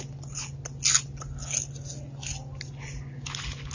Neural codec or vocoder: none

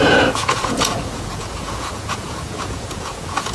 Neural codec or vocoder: vocoder, Vocos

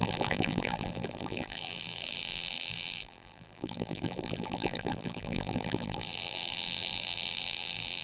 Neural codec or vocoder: vocoder, BigVGAN v2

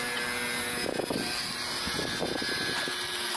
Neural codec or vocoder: none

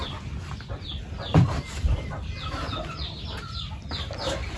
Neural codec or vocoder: none